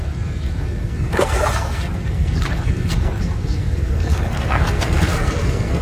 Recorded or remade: remade